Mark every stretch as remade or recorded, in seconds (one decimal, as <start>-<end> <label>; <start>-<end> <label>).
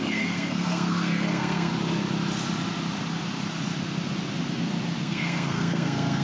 0.0-1.7 remade; 1.7-5.0 recorded; 5.0-6.2 remade